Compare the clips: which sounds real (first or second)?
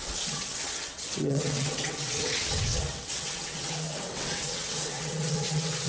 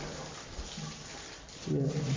second